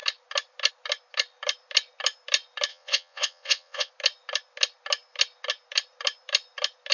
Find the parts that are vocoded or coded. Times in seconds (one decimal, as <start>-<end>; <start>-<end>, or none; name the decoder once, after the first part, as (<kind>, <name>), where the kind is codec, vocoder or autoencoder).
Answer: 2.7-3.9 (vocoder, WaveNeXt)